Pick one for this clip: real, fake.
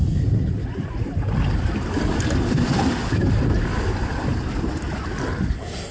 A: real